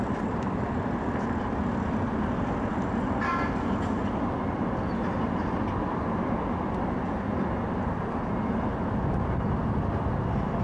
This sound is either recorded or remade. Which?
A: recorded